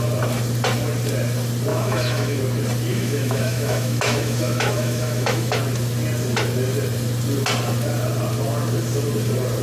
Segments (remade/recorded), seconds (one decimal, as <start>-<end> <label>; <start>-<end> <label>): 0.0-1.7 recorded; 1.7-2.4 remade; 2.4-2.9 recorded; 2.9-5.6 remade; 5.6-9.6 recorded

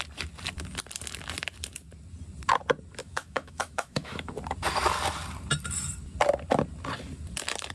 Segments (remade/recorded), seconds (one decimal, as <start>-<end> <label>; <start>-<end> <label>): 0.0-3.0 recorded; 3.0-4.3 remade; 4.3-7.7 recorded

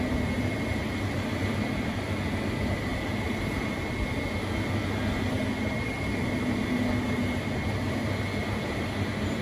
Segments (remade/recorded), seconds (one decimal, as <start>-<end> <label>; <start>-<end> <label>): 0.0-9.4 recorded

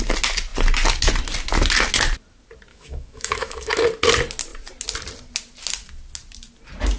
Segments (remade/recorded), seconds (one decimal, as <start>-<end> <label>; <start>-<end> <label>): 0.0-2.7 recorded; 2.7-3.7 remade; 3.7-7.0 recorded

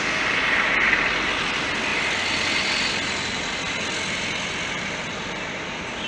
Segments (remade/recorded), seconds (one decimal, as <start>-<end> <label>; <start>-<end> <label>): 0.0-6.1 recorded